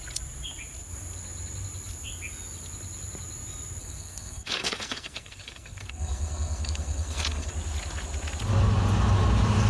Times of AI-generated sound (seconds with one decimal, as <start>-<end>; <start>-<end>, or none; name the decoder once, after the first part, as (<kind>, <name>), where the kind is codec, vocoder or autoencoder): 3.8-7.5 (codec, SNAC)